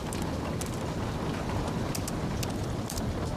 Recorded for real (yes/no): yes